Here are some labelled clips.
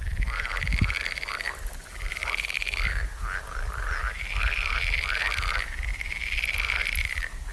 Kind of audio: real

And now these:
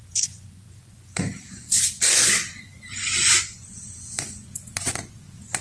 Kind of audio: fake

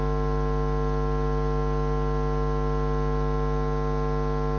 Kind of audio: real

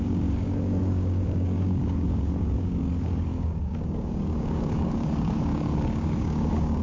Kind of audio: fake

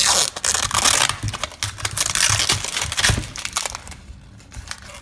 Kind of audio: real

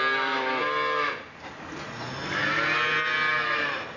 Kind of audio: real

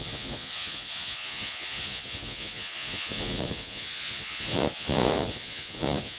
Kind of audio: fake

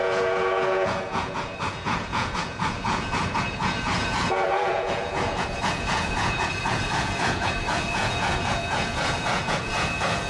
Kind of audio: fake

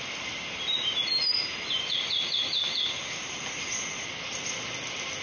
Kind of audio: real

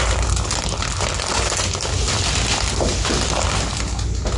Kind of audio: real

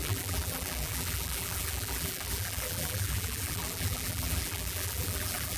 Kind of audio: fake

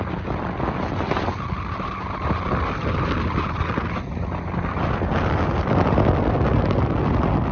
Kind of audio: real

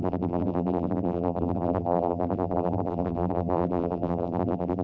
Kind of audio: fake